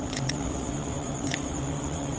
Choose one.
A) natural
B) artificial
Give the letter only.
B